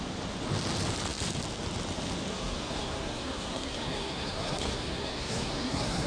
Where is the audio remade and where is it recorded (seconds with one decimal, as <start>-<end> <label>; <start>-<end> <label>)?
0.0-2.3 recorded; 2.3-6.1 remade